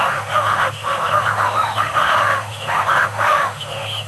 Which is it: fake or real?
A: fake